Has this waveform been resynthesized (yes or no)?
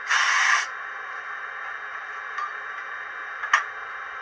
no